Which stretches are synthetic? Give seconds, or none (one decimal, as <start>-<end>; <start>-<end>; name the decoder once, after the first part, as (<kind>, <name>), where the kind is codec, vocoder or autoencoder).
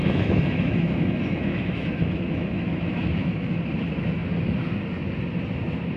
0.0-3.6 (autoencoder, DAC-VAE)